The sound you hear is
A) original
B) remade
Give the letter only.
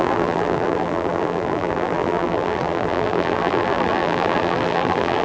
B